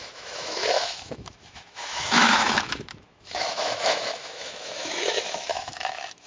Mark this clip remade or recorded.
remade